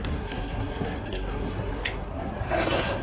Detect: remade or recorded remade